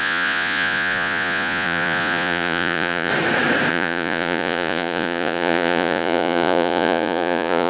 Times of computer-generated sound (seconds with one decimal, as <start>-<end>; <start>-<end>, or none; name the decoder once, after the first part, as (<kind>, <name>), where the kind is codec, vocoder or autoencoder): 0.0-3.1 (vocoder, Vocos); 3.7-7.7